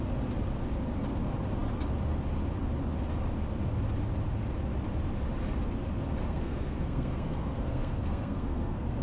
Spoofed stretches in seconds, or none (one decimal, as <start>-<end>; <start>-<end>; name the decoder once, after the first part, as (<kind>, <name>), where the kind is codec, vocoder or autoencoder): 6.2-9.0 (codec, SNAC)